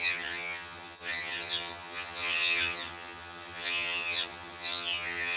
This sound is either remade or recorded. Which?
remade